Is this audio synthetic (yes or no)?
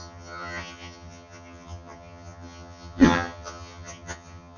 yes